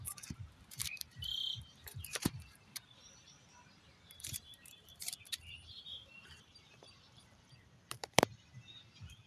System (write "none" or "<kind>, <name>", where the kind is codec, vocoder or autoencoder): vocoder, BigVGAN v2